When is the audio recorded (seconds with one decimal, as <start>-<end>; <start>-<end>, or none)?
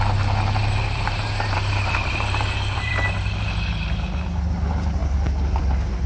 0.0-0.6; 2.9-6.1